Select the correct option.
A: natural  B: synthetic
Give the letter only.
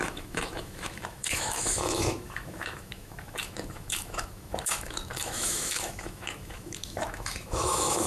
B